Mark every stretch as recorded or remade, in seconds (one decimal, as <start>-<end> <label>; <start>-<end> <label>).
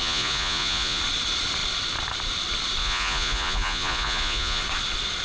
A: 0.0-1.0 remade; 1.0-2.8 recorded; 2.8-4.6 remade; 4.6-5.2 recorded